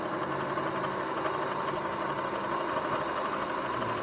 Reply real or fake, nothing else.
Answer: real